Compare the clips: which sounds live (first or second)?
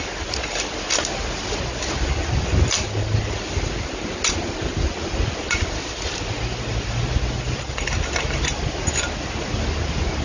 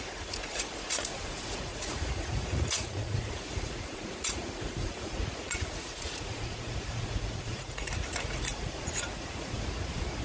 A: first